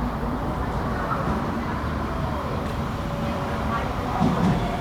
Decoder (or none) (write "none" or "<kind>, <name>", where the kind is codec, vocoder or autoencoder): vocoder, BigVGAN v2